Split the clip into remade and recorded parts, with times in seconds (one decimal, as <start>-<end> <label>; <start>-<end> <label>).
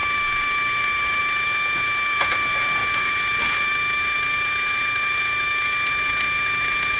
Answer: 0.0-7.0 remade